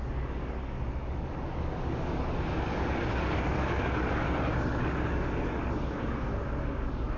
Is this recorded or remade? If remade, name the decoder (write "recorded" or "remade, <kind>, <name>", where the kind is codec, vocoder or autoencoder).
remade, codec, DAC